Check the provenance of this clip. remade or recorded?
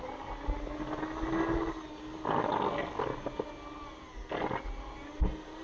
recorded